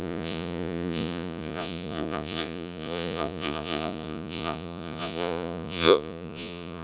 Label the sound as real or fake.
fake